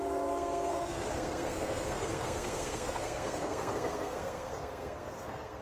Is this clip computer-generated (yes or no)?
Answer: yes